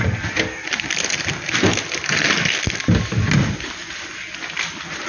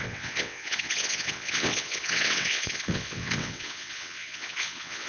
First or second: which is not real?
second